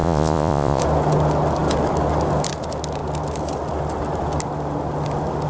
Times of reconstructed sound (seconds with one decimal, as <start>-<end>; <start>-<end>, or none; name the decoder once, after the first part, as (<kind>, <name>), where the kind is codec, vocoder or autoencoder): 0.0-0.8 (vocoder, Vocos)